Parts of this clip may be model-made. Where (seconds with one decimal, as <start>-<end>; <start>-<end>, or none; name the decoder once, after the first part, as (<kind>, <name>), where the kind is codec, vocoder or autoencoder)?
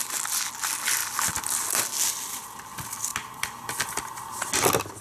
none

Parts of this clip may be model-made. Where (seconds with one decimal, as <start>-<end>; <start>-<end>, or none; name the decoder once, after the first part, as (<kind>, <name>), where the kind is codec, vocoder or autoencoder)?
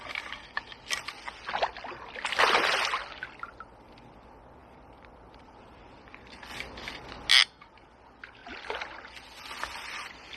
4.6-5.8 (vocoder, BigVGAN v2)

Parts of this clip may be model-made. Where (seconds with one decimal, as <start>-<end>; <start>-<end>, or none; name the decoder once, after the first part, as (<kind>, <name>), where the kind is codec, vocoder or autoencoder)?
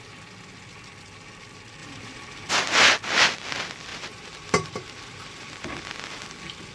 1.8-2.5 (vocoder, BigVGAN v2); 3.9-5.5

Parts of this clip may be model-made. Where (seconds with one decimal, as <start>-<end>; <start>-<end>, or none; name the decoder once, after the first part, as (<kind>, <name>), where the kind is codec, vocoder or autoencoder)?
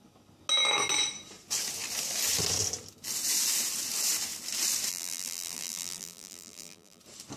4.9-7.0 (vocoder, BigVGAN v2)